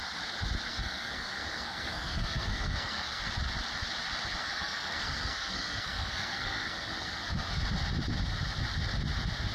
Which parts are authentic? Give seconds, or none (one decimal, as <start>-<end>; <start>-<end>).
0.0-0.7; 3.3-4.4; 7.6-9.5